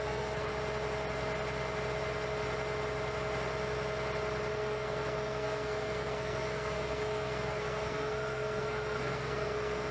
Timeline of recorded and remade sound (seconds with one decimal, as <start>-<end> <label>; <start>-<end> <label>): 0.0-0.5 remade; 0.5-4.5 recorded; 4.5-9.9 remade